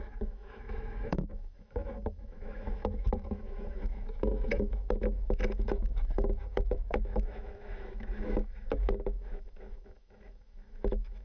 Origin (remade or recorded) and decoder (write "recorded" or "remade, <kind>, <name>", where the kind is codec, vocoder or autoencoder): remade, autoencoder, DAC-VAE